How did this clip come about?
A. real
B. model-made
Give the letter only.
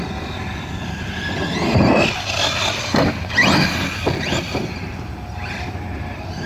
A